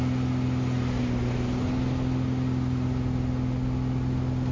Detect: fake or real real